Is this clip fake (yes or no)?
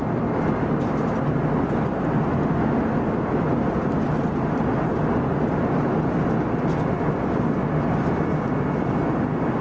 no